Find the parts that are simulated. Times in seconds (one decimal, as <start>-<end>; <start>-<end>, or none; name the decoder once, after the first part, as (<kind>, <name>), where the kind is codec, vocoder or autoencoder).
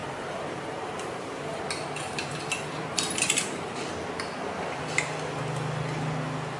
0.0-1.6 (vocoder, BigVGAN v2)